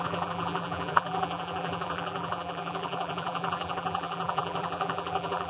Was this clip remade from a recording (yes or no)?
yes